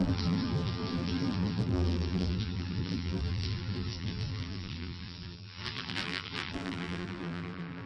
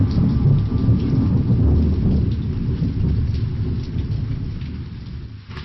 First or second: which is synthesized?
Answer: first